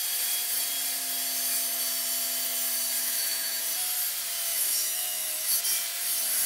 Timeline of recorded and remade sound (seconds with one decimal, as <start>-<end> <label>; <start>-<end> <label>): 0.0-3.0 recorded; 3.0-3.6 remade; 3.6-4.5 recorded; 4.5-5.6 remade; 5.6-6.5 recorded